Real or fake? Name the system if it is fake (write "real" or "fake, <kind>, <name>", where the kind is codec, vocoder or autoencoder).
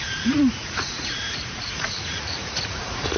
fake, vocoder, Vocos